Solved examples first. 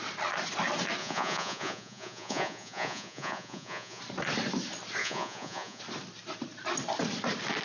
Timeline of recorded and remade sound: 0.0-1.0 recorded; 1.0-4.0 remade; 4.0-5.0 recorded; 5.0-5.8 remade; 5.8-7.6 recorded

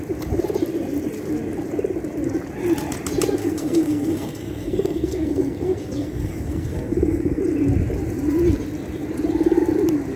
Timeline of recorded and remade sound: 0.0-3.4 recorded; 3.4-7.4 remade; 7.4-10.2 recorded